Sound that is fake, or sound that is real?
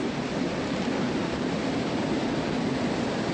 fake